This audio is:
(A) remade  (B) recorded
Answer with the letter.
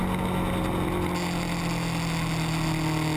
B